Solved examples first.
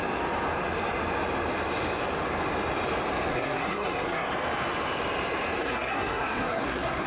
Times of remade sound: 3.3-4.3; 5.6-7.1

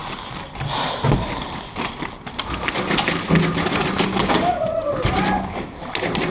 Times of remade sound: none

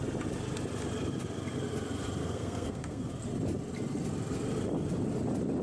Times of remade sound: 2.2-3.1

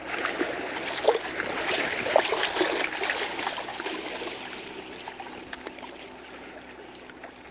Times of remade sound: none

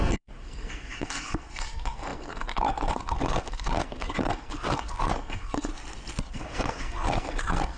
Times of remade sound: 0.0-5.7; 6.3-7.8

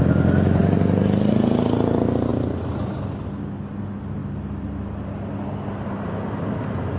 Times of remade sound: 2.3-3.8; 4.2-5.3